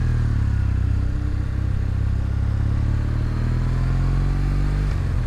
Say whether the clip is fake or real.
real